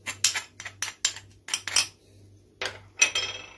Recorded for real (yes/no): yes